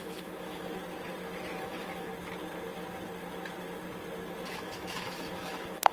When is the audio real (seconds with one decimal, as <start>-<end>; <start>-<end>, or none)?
0.8-1.6; 2.1-4.5